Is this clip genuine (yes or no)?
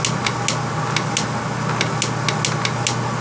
yes